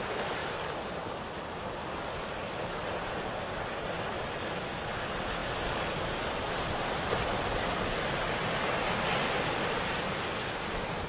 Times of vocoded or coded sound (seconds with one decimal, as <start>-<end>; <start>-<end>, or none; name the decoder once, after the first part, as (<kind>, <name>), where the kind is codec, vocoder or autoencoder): 0.4-3.1 (vocoder, BigVGAN v2)